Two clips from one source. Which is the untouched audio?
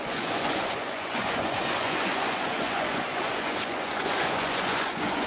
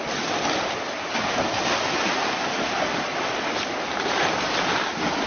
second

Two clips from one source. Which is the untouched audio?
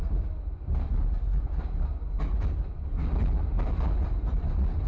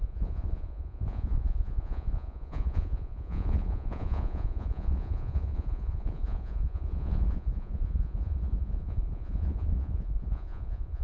first